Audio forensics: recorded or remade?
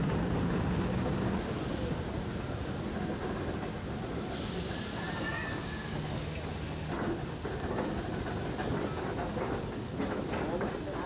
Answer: recorded